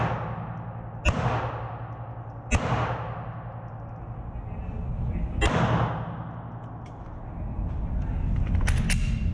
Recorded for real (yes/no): yes